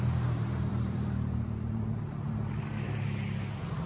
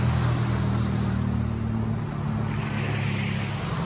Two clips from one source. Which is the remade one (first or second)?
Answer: first